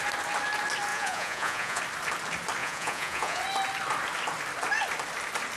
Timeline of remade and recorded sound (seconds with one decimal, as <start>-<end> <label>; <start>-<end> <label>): 0.0-0.9 recorded; 0.9-1.8 remade; 1.8-2.6 recorded; 2.6-3.4 remade; 3.4-5.6 recorded